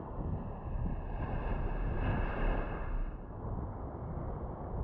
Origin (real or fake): real